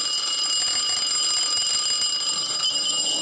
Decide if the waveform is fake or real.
real